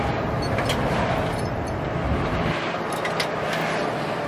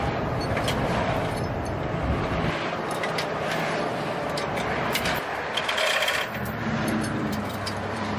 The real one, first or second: first